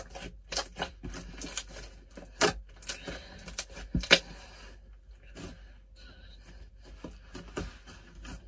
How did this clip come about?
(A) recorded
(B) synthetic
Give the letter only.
A